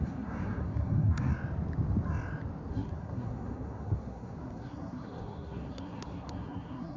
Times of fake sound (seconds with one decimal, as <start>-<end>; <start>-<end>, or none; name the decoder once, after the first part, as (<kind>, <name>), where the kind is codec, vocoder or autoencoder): 0.0-1.3 (codec, SNAC); 2.7-7.0

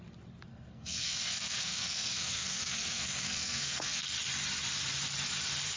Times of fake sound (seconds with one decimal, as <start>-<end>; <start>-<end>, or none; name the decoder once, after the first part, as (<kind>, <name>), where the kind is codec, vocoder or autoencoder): 0.5-4.0 (codec, SNAC)

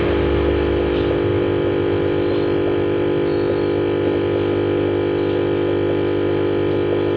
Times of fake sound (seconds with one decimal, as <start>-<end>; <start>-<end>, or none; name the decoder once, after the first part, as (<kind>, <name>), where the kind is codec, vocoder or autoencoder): none

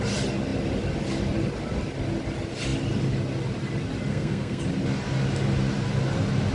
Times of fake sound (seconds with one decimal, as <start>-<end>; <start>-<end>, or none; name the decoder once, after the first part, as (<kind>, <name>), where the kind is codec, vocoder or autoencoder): 4.1-4.6 (codec, SNAC)